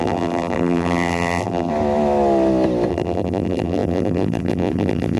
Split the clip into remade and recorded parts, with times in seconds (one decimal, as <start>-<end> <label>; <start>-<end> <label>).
0.0-1.7 remade; 1.7-2.9 recorded; 2.9-5.2 remade

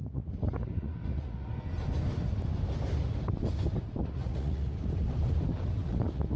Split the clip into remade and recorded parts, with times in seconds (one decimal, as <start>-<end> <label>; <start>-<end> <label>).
0.0-1.5 remade; 1.5-4.0 recorded; 4.0-4.7 remade; 4.7-5.8 recorded; 5.8-6.4 remade

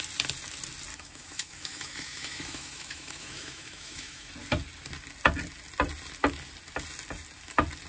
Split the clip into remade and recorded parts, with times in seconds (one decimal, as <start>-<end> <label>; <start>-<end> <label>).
0.0-0.9 recorded; 0.9-4.3 remade; 4.3-7.9 recorded

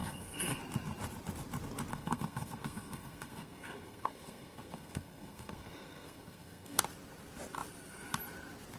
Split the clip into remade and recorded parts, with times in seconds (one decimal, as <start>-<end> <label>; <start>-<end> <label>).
0.0-0.6 remade; 0.6-1.9 recorded; 1.9-6.8 remade; 6.8-8.8 recorded

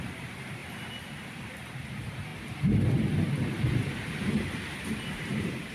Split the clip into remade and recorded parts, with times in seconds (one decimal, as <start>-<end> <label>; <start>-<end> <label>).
0.0-0.6 remade; 0.6-1.4 recorded; 1.4-5.7 remade

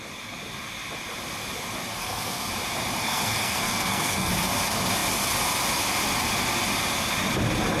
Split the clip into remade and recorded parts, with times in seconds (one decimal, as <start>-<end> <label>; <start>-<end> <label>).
0.0-2.0 recorded; 2.0-2.5 remade; 2.5-3.0 recorded; 3.0-4.3 remade; 4.3-7.8 recorded

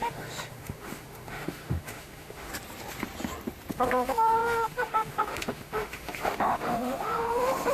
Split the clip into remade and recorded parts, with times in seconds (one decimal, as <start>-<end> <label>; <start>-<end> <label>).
0.0-2.5 remade; 2.5-3.7 recorded; 3.7-7.7 remade